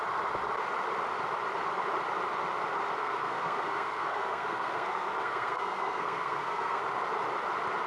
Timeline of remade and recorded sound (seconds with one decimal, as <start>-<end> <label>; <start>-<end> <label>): 0.0-3.0 recorded; 3.0-6.8 remade; 6.8-7.9 recorded